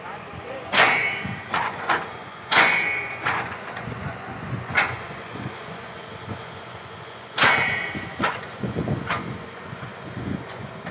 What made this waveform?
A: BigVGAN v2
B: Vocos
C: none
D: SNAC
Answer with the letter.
B